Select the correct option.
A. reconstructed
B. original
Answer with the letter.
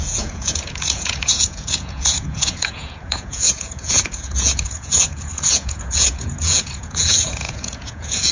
A